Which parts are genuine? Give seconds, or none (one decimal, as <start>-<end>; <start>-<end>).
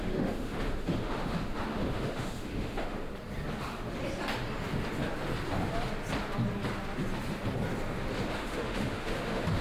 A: 3.1-8.3